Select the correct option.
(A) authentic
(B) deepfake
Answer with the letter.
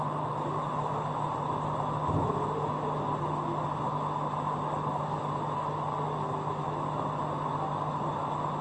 A